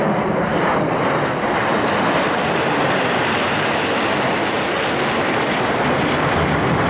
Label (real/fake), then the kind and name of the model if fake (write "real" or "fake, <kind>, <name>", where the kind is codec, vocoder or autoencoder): fake, vocoder, BigVGAN v2